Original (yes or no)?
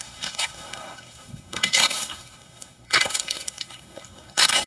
no